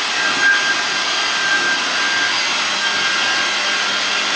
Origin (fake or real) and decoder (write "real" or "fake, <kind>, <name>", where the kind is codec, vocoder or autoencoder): real